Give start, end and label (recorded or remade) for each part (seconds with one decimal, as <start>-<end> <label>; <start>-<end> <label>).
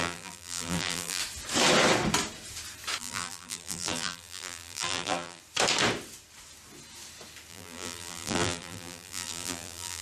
0.0-1.2 remade; 1.2-3.0 recorded; 3.0-5.4 remade; 5.4-7.5 recorded; 7.5-10.0 remade